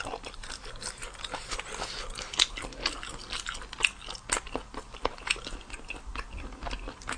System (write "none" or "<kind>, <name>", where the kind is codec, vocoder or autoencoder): none